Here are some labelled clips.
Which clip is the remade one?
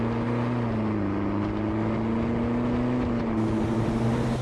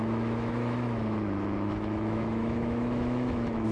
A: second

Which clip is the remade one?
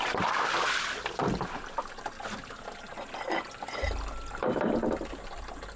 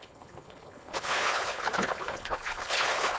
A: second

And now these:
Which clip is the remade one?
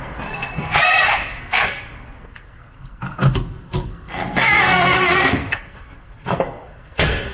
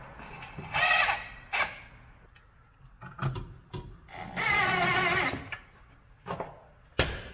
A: first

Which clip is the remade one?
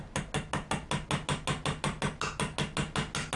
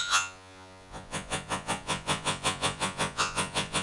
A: second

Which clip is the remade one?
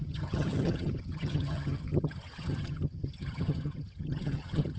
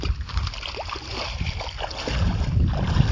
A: first